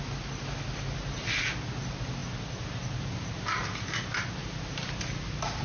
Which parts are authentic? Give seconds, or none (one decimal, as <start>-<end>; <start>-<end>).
0.0-4.4